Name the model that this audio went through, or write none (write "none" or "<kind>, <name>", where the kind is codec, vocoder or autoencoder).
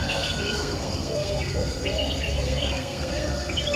codec, SNAC